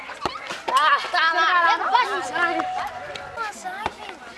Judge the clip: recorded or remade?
remade